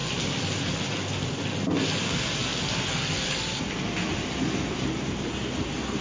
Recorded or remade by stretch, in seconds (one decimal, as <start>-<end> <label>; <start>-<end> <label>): 0.0-6.0 recorded